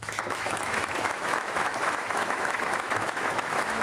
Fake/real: fake